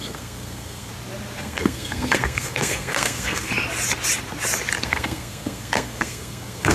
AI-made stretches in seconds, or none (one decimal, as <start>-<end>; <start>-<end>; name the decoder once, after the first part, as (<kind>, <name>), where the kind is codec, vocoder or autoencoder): 0.0-0.9 (codec, SNAC); 1.4-3.5; 4.8-6.7